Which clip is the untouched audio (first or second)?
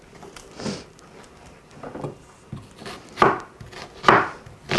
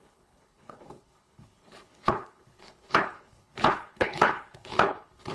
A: first